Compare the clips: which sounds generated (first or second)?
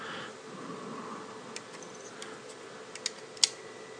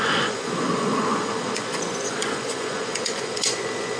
second